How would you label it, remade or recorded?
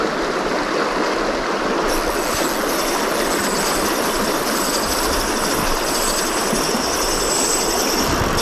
recorded